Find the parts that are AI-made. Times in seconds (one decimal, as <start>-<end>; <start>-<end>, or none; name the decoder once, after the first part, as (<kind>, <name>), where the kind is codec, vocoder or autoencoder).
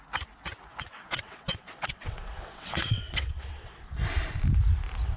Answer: 0.7-3.8 (vocoder, WaveNeXt)